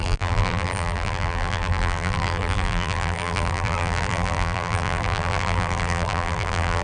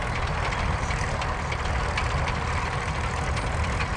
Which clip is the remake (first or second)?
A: first